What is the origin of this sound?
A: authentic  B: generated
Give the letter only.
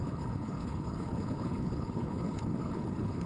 B